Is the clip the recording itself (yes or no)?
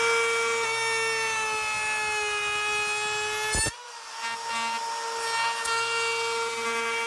yes